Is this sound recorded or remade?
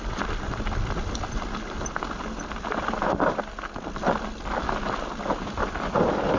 recorded